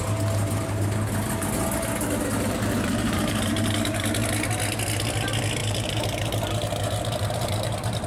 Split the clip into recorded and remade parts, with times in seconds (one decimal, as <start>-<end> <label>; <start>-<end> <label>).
0.0-2.3 recorded; 2.3-3.7 remade; 3.7-5.6 recorded; 5.6-8.1 remade